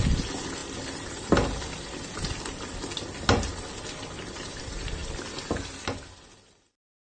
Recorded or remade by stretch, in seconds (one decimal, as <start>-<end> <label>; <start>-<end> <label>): 0.0-7.0 recorded

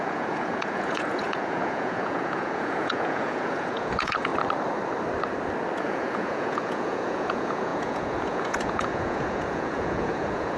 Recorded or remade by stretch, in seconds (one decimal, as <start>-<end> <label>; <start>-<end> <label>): 0.0-4.3 remade; 4.3-5.8 recorded; 5.8-10.6 remade